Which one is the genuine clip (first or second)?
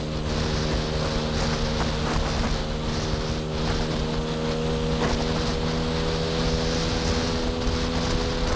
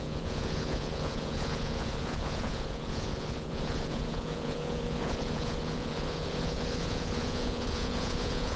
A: first